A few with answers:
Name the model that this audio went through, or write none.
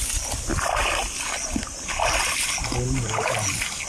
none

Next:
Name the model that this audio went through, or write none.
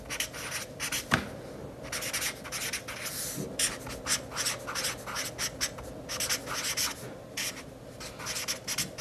none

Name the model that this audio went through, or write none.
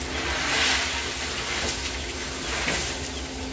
none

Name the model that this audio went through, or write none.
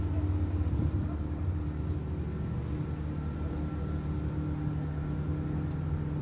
none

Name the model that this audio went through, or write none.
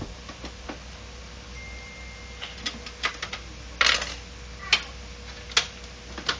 none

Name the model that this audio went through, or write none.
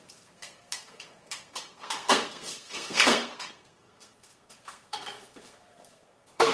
codec, SNAC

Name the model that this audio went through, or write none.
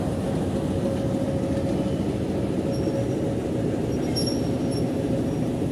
none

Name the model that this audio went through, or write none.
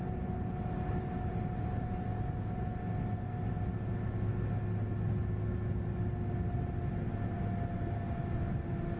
none